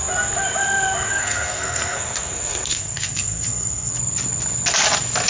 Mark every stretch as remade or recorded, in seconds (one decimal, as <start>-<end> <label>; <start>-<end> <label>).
0.0-1.1 recorded; 1.1-3.9 remade; 3.9-5.3 recorded